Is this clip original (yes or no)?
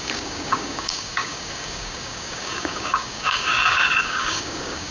no